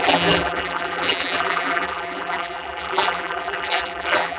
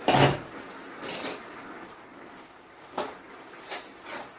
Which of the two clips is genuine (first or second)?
second